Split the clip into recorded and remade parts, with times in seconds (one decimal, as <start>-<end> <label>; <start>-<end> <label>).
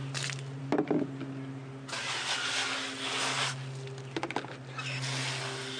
0.0-5.8 recorded